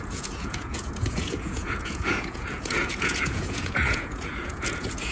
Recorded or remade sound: remade